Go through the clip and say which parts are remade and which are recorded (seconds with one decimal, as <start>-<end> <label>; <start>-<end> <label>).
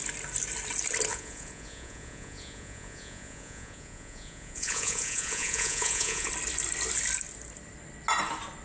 0.0-1.1 recorded; 1.1-6.3 remade; 6.3-8.6 recorded